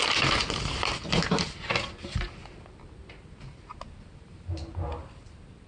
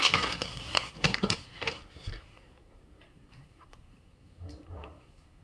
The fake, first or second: second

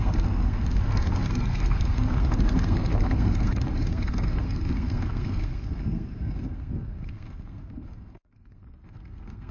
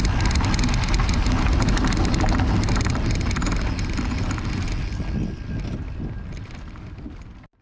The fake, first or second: first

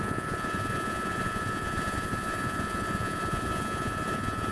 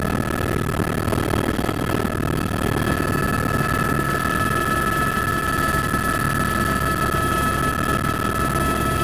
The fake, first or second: first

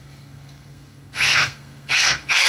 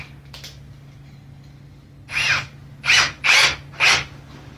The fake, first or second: first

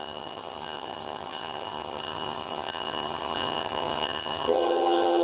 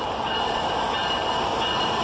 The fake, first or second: first